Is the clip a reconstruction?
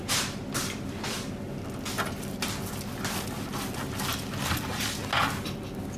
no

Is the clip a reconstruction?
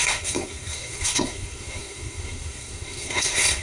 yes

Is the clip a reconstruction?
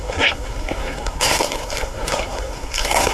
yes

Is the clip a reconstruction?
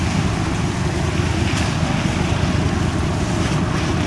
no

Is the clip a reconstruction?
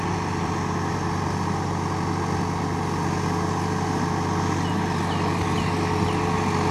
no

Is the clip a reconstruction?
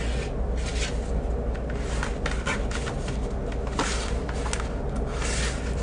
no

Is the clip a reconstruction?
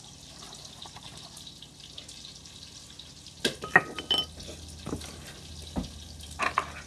no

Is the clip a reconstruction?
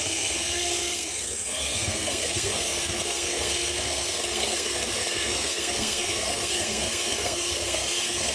yes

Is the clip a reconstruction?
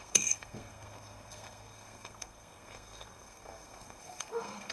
yes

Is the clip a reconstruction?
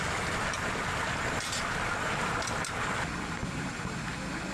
no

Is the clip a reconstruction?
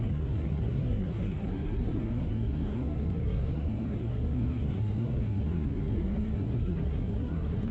yes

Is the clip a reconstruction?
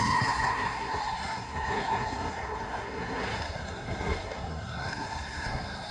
yes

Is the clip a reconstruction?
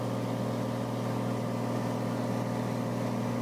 no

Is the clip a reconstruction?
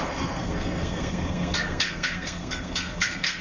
yes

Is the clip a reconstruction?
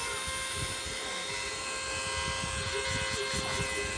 no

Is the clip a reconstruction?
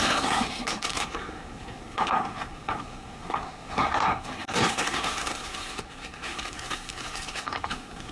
yes